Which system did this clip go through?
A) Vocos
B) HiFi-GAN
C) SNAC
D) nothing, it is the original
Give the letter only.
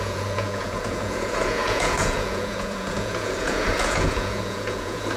A